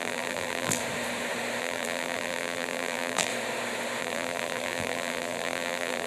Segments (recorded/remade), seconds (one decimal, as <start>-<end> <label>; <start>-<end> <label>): 0.0-0.8 remade; 0.8-1.6 recorded; 1.6-3.3 remade; 3.3-4.0 recorded; 4.0-6.1 remade